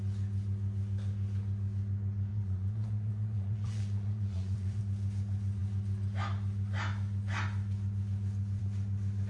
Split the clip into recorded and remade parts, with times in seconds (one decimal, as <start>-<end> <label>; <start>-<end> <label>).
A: 0.0-2.3 recorded; 2.3-4.8 remade; 4.8-9.3 recorded